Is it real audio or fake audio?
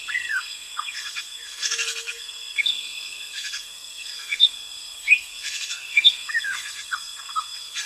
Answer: fake